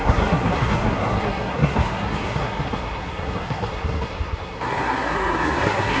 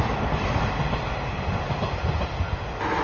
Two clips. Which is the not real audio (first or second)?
first